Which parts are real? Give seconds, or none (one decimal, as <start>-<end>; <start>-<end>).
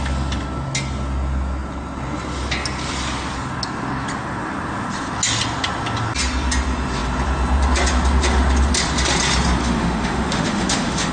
0.0-9.6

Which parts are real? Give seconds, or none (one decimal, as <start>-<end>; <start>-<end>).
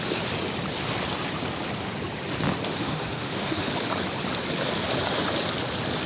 0.0-2.7; 3.7-6.1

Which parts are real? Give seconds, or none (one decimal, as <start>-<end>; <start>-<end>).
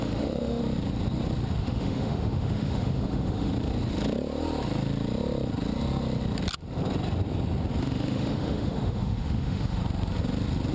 0.6-1.6; 3.5-7.8; 9.8-10.7